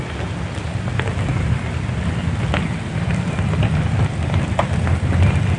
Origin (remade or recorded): recorded